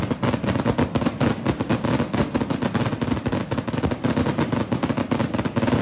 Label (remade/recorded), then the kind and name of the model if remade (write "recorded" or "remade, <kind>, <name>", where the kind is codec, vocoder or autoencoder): recorded